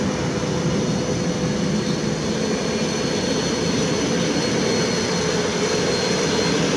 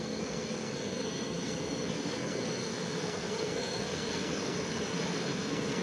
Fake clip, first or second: second